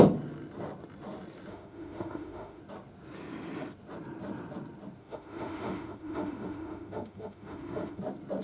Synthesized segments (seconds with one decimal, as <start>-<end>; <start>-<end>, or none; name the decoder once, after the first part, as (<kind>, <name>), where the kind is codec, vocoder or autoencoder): 1.5-2.6 (autoencoder, DAC-VAE); 5.0-8.0